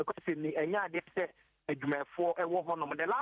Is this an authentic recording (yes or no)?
no